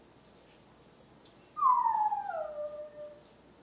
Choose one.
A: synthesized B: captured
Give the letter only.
B